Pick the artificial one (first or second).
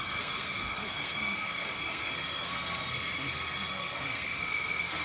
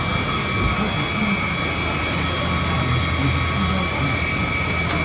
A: first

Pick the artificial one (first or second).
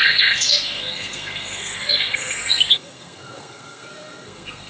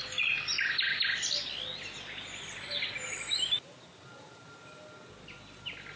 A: first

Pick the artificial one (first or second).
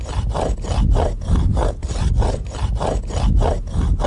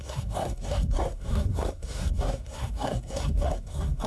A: second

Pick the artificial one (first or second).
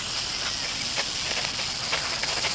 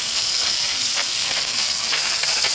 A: second